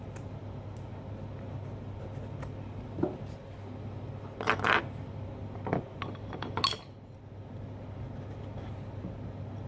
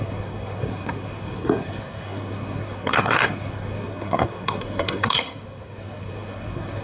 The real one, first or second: first